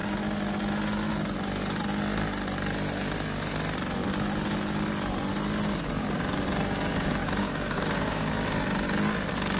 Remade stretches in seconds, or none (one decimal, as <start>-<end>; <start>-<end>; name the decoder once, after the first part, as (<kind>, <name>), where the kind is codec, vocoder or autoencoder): 7.2-8.3 (codec, DAC)